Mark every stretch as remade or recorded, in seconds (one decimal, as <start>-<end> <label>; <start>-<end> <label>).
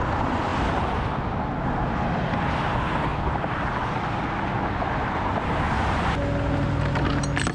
0.0-7.5 recorded